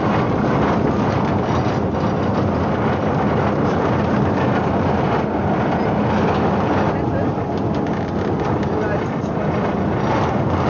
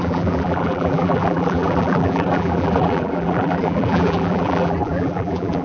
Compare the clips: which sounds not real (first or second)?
second